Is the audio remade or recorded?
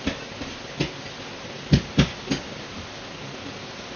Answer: recorded